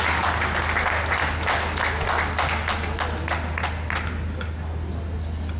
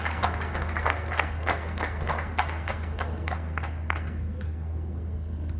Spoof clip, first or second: second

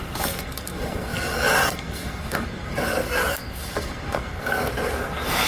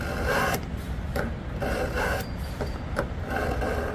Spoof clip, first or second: first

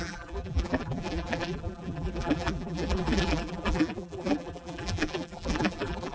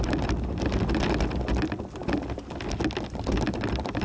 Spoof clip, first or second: first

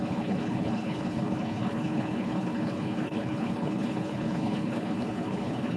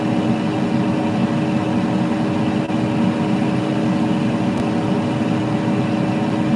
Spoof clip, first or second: first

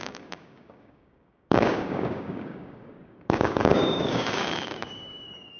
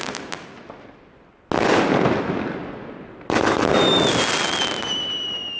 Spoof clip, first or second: first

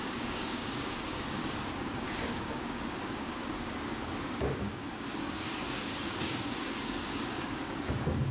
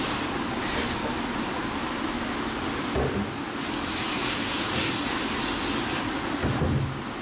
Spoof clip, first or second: first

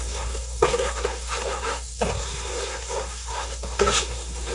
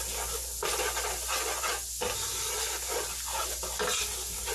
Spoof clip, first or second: first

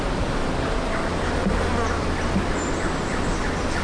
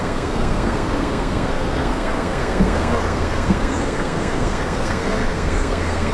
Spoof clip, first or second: second